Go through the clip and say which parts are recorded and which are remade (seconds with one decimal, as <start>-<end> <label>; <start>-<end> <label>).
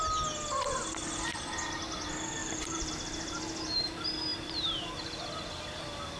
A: 0.0-2.4 recorded; 2.4-2.9 remade; 2.9-6.2 recorded